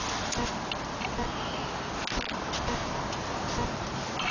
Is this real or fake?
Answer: real